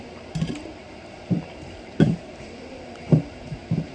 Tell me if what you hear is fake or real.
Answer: fake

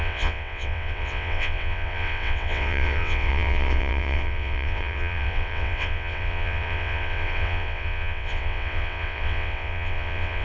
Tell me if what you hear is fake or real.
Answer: fake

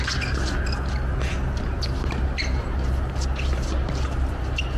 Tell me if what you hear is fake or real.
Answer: real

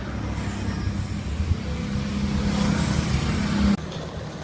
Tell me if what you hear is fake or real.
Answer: real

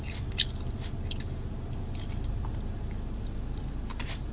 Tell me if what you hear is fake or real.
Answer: real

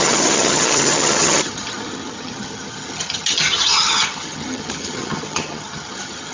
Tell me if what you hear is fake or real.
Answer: fake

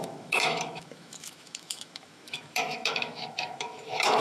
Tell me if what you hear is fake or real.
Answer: fake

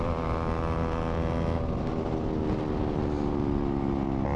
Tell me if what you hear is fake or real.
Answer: real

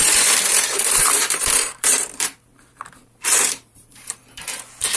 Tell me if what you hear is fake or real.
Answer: fake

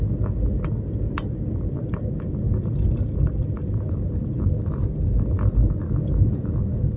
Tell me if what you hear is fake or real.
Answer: real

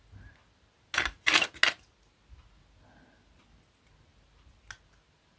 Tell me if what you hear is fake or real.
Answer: real